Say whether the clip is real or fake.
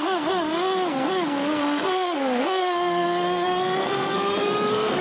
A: fake